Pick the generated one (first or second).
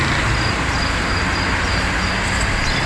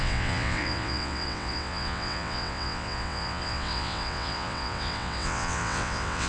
second